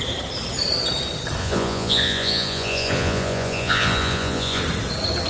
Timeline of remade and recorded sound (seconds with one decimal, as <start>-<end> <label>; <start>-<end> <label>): 0.0-1.4 recorded; 1.4-4.6 remade; 4.6-5.3 recorded

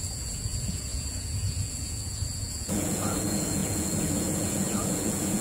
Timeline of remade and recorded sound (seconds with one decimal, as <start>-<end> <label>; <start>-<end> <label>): 0.0-5.4 remade

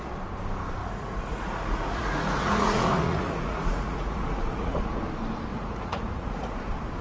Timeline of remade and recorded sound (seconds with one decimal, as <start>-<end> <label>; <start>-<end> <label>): 0.0-0.8 recorded; 0.8-5.0 remade; 5.0-5.5 recorded; 5.5-6.6 remade; 6.6-7.0 recorded

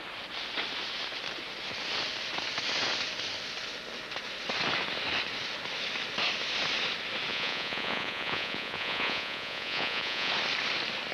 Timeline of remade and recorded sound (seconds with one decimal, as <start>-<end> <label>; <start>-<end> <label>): 0.0-7.3 recorded; 7.3-10.3 remade; 10.3-11.1 recorded

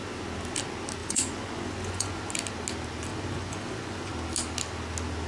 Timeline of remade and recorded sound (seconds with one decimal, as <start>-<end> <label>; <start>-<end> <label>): 0.0-1.0 recorded; 1.0-2.2 remade; 2.2-3.1 recorded; 3.1-4.1 remade; 4.1-5.3 recorded

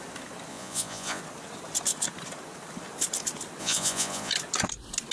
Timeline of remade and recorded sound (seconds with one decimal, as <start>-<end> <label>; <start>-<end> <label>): 0.0-0.5 recorded; 0.5-1.2 remade; 1.2-3.6 recorded; 3.6-4.3 remade; 4.3-5.1 recorded

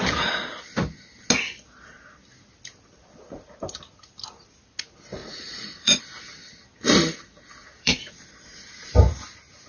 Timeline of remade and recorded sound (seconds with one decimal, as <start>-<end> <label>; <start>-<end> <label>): 0.0-5.2 recorded; 5.2-6.0 remade; 6.0-7.6 recorded; 7.6-8.1 remade; 8.1-9.7 recorded

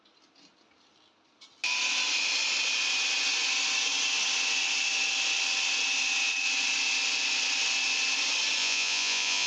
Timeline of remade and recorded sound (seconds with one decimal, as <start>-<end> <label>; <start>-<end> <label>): 0.0-8.6 recorded; 8.6-9.5 remade